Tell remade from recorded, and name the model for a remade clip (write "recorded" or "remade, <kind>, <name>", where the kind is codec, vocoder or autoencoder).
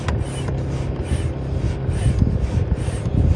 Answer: recorded